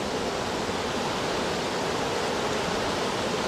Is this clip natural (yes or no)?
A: yes